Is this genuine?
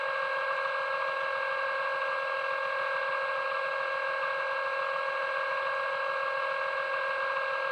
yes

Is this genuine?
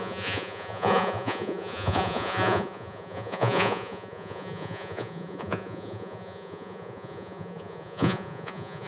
no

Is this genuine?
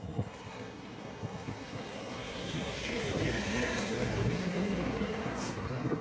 no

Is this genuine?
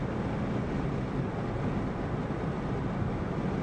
yes